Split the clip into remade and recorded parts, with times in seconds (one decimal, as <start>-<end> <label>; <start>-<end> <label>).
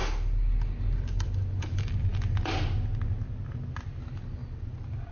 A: 0.0-2.1 remade; 2.1-4.1 recorded; 4.1-5.1 remade